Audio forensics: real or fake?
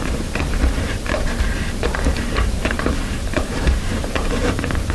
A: fake